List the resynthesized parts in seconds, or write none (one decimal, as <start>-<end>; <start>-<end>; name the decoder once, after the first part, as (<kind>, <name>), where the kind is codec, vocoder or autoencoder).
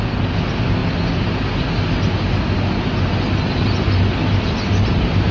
none